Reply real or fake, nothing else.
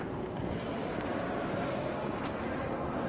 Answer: real